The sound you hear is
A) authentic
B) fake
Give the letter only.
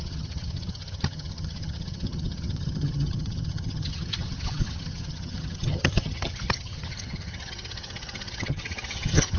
B